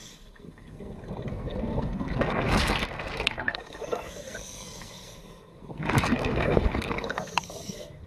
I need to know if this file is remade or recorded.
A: remade